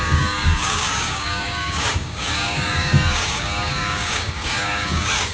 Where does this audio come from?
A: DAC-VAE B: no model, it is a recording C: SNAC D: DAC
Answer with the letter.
D